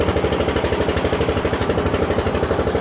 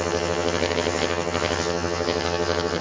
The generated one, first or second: second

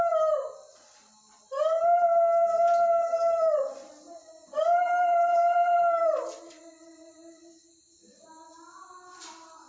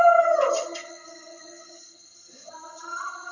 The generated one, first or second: second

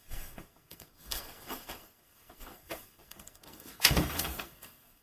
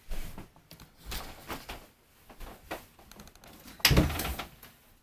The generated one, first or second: first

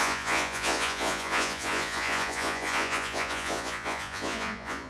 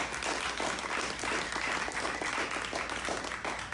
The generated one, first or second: first